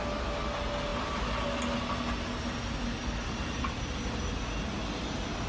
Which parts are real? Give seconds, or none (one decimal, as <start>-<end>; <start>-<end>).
0.0-5.5